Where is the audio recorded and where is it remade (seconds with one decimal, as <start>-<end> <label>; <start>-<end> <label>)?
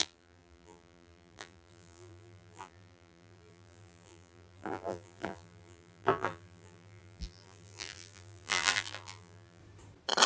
0.0-9.6 remade; 9.6-10.3 recorded